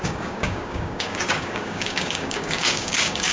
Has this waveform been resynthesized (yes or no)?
yes